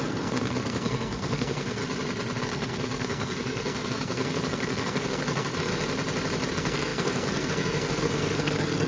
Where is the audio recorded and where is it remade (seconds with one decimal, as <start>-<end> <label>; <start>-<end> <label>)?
0.0-1.8 remade; 1.8-2.4 recorded; 2.4-5.7 remade; 5.7-6.5 recorded; 6.5-8.9 remade